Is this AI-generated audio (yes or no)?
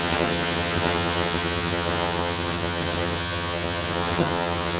yes